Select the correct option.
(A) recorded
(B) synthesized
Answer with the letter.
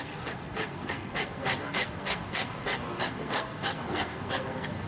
B